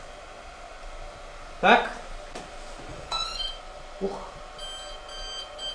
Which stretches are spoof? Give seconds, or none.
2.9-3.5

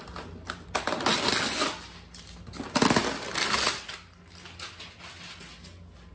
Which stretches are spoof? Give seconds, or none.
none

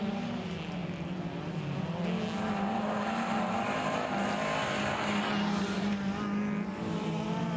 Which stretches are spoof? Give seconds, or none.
none